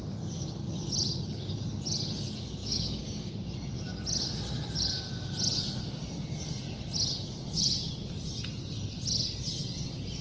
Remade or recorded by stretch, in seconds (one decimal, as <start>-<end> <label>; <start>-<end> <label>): 0.0-2.6 recorded; 2.6-3.3 remade; 3.3-10.2 recorded